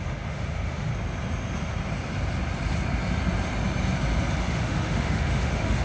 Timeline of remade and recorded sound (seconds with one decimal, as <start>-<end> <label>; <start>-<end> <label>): 0.0-0.9 remade; 0.9-4.4 recorded; 4.4-5.8 remade